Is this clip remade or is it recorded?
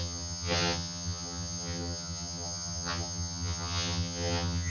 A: remade